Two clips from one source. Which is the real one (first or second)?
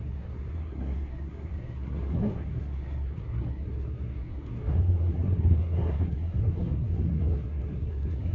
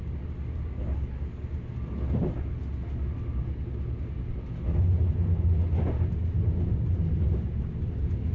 second